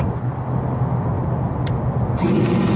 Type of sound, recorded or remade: recorded